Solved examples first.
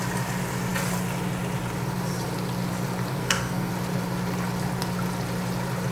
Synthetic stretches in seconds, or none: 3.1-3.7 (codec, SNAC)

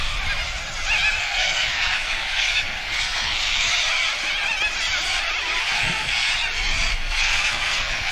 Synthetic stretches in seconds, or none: 1.2-3.7 (codec, SNAC); 5.6-6.3; 6.9-8.1

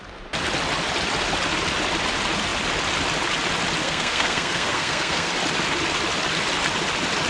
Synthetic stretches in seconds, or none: 3.8-5.3 (codec, SNAC)

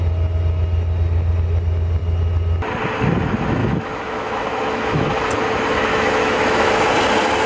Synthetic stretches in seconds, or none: 3.6-5.1 (autoencoder, DAC-VAE); 5.9-6.9

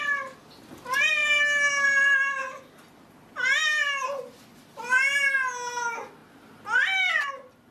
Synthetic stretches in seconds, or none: none